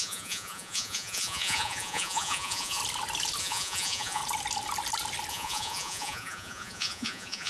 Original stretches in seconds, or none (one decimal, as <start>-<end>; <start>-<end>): 2.8-3.4; 4.2-5.3

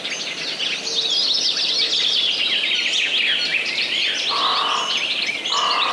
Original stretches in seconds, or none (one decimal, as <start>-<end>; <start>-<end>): 0.0-5.9

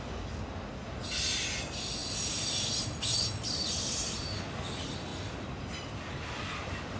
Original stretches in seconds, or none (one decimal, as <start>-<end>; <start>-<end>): 0.0-7.0